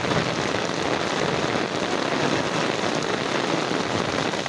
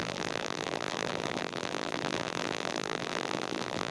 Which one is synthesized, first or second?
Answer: second